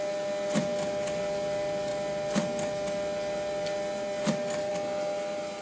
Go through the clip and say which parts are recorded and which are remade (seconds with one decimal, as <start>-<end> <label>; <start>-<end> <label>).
0.0-5.6 recorded